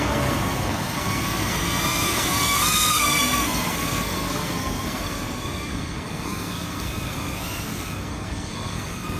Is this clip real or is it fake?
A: fake